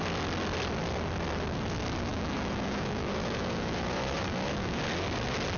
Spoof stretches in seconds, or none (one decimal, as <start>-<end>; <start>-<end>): 2.1-4.8